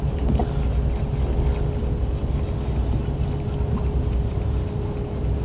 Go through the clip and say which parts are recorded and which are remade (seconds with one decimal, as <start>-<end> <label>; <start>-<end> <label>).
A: 0.0-0.4 remade; 0.4-3.6 recorded; 3.6-5.4 remade